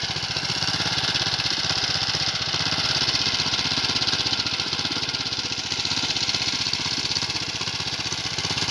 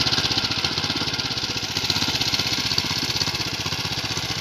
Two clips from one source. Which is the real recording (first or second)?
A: second